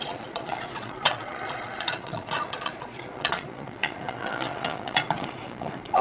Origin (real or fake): fake